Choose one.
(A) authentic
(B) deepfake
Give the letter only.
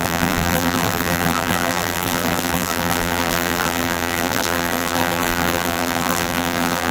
B